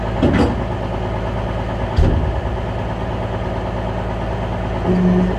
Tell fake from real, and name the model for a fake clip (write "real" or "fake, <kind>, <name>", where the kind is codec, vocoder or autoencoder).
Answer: real